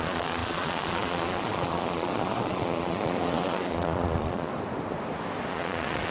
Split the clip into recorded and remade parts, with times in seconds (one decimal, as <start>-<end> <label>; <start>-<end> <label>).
0.0-4.5 remade; 4.5-5.5 recorded; 5.5-6.1 remade